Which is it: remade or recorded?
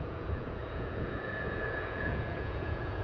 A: remade